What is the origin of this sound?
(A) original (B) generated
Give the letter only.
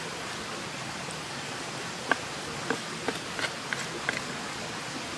A